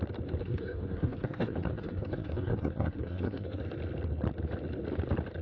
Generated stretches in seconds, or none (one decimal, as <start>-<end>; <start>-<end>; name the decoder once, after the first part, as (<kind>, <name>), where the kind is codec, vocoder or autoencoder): 0.4-3.6 (codec, SNAC)